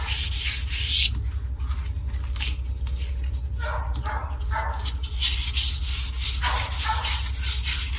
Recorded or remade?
recorded